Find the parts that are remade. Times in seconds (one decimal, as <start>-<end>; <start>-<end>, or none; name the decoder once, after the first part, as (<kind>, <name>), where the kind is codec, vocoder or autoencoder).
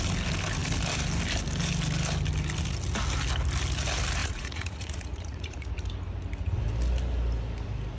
4.2-5.7 (vocoder, Vocos)